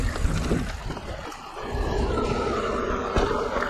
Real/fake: real